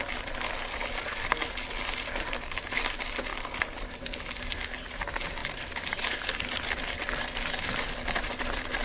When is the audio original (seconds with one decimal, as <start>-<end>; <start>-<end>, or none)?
0.0-8.8